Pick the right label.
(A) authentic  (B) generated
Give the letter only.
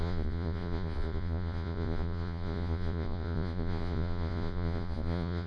B